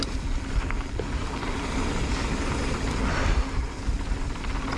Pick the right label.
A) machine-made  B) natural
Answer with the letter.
B